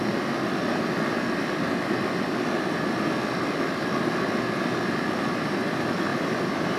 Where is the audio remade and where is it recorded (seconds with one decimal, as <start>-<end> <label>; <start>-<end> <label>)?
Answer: 0.0-6.8 recorded